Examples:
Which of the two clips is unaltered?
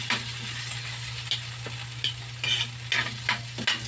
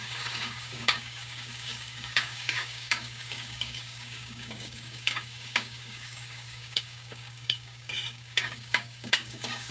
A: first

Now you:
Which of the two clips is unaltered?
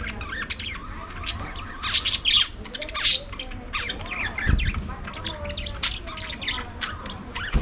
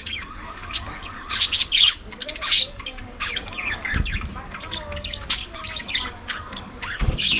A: first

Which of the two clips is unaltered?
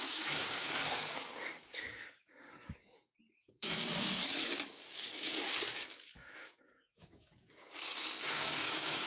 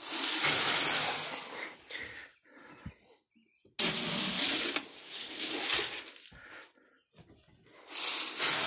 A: second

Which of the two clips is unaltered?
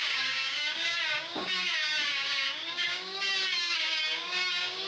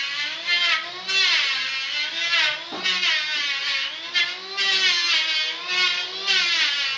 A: second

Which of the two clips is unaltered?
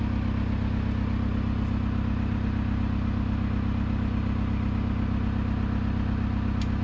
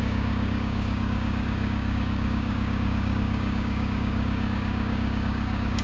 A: first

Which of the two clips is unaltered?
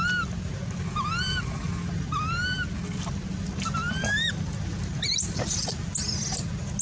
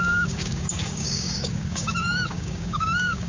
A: first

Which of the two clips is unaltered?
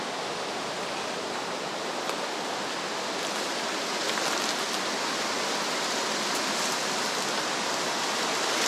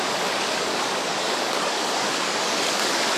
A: first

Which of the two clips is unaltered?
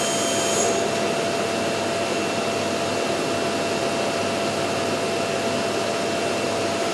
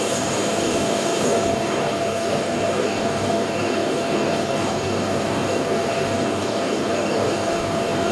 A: first